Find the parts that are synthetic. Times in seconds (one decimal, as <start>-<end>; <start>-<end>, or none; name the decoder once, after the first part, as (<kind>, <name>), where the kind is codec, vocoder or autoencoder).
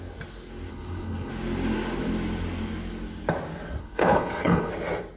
0.7-1.3 (codec, HILCodec); 3.8-4.7